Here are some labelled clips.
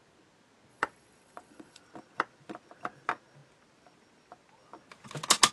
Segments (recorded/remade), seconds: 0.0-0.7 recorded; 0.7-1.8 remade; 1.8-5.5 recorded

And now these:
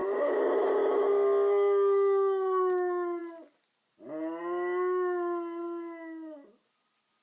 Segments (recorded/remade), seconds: 0.0-7.2 recorded

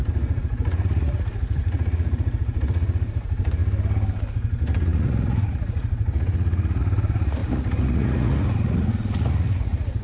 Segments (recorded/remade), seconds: 0.0-3.6 remade; 3.6-4.3 recorded; 4.3-10.0 remade